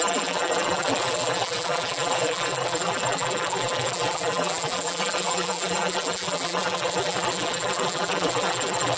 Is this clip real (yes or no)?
no